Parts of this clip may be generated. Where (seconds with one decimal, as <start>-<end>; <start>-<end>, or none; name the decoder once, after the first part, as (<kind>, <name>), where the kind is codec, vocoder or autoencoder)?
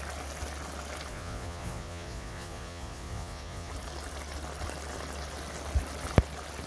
1.1-3.7 (vocoder, Vocos)